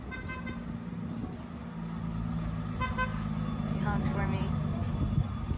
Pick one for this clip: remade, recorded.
recorded